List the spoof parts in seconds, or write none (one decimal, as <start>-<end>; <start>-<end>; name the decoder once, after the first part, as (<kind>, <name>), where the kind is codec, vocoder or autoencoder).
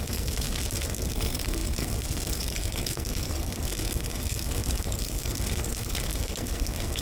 0.0-7.0 (codec, SNAC)